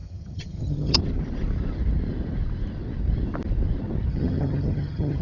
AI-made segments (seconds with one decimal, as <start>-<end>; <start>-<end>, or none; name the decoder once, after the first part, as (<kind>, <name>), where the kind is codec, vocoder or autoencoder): 0.0-1.0 (vocoder, HiFi-GAN); 4.1-5.2